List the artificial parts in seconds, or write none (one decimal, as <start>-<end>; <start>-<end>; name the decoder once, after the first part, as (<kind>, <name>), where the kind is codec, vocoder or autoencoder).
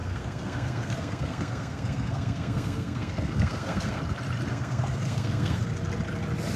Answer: 0.0-4.0 (codec, SNAC); 4.5-5.7